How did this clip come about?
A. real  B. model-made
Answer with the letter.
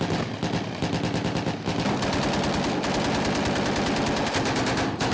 A